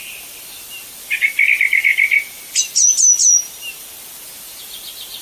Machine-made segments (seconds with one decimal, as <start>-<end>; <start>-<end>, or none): none